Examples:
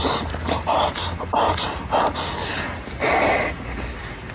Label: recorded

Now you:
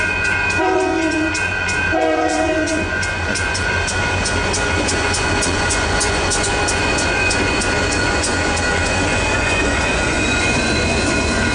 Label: remade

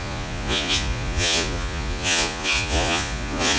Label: remade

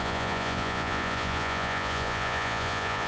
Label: remade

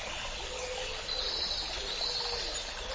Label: recorded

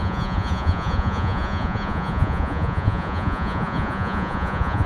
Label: remade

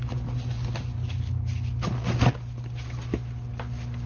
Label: recorded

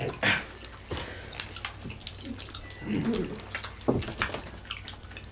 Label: recorded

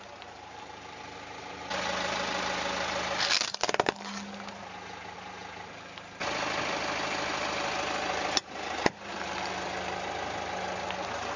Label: recorded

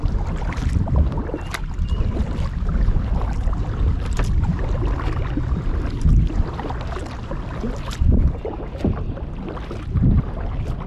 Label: recorded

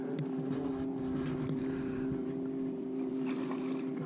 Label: recorded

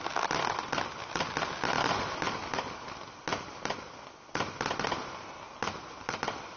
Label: recorded